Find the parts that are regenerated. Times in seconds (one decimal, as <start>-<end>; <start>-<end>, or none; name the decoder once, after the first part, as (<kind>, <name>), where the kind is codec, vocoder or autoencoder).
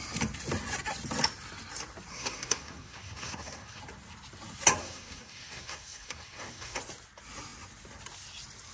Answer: 2.1-3.8 (codec, SNAC); 4.8-6.8